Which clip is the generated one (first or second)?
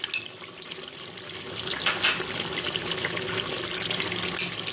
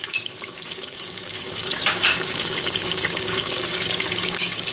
second